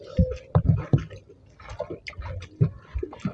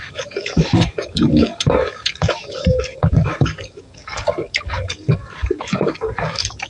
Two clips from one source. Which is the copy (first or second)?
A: second